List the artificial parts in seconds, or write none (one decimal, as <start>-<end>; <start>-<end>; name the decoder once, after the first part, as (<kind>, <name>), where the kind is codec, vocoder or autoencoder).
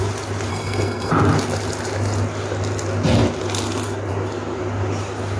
0.5-1.1 (codec, SNAC)